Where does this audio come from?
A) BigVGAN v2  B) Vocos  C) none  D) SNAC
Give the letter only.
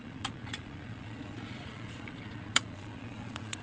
B